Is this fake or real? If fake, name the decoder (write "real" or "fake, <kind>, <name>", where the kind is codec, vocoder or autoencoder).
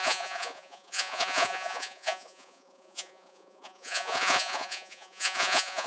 fake, vocoder, Vocos